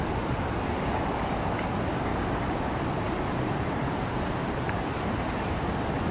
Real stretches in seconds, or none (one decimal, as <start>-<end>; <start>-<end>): 0.0-2.1; 5.6-6.1